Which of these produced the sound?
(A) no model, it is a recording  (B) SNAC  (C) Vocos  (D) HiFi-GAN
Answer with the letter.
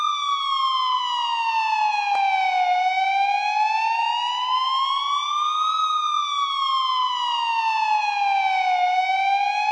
A